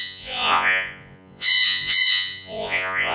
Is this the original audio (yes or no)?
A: no